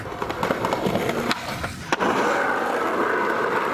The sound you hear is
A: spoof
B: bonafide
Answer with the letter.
B